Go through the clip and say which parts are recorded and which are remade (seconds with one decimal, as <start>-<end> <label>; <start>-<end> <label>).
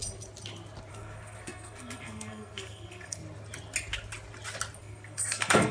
0.0-0.9 recorded; 0.9-3.2 remade; 3.2-4.8 recorded; 4.8-5.7 remade